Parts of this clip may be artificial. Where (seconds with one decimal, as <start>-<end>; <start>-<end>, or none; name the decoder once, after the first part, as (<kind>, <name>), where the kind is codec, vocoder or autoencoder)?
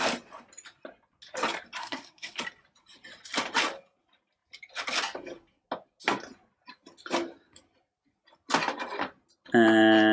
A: 1.8-2.4 (codec, SNAC)